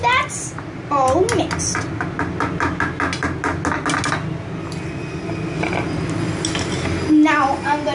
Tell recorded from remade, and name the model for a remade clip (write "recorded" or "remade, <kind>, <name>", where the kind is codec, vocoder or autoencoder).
recorded